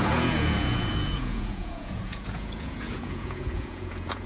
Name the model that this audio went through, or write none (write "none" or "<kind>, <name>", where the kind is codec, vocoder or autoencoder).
vocoder, Vocos